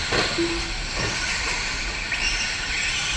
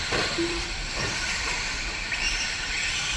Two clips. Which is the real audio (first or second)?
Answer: first